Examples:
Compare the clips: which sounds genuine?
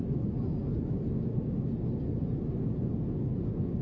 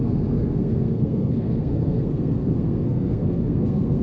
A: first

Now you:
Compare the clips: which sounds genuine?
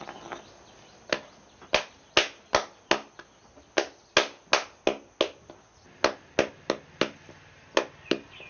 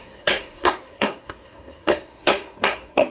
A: first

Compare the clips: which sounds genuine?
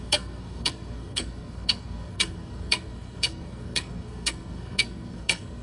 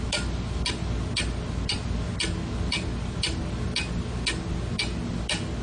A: second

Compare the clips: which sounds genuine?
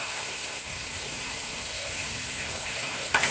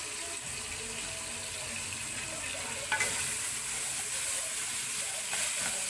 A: second